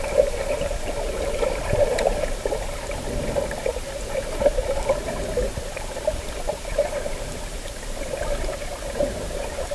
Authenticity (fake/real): fake